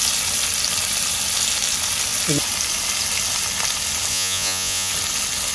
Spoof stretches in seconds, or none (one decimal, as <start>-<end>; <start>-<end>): 4.1-4.9